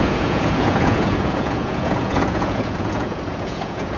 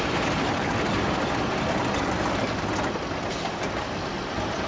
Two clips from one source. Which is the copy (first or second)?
first